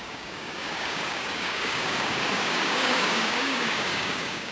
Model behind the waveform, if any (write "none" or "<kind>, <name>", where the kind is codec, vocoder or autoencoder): codec, DAC